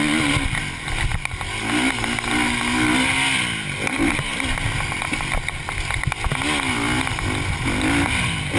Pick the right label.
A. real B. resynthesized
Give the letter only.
A